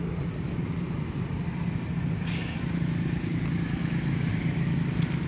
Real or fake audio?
real